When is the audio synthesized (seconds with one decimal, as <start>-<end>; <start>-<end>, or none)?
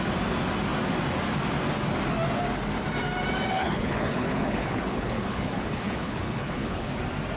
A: 3.5-6.9